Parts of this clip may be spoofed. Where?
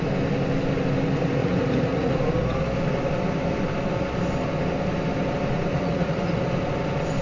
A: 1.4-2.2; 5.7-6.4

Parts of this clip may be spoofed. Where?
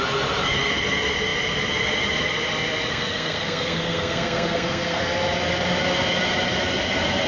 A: 2.9-5.0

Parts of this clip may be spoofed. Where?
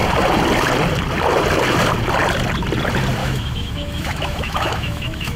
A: 3.2-5.4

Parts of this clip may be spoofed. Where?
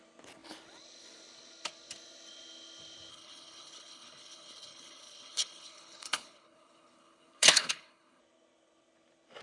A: 3.1-8.2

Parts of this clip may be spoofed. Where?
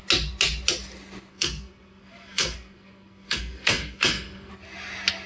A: 1.3-4.5